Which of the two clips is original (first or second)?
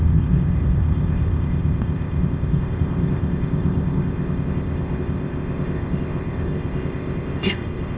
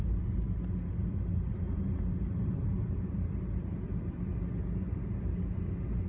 second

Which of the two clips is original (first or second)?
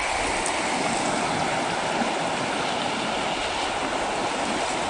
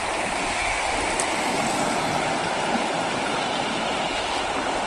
first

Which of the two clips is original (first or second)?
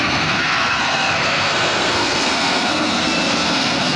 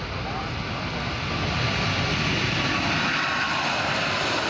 second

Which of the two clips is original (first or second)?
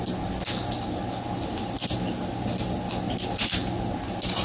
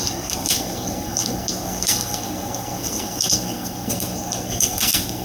first